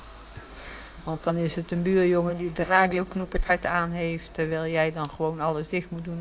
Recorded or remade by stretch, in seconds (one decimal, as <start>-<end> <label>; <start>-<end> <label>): 0.0-0.5 recorded; 0.5-1.3 remade; 1.3-2.3 recorded; 2.3-3.5 remade; 3.5-6.2 recorded